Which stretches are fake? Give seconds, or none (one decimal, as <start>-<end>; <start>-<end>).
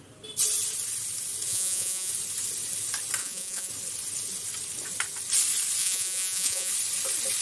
1.5-2.1; 3.2-3.7; 5.8-6.7